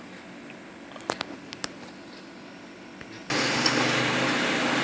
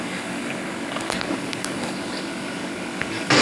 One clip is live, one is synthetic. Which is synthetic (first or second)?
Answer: second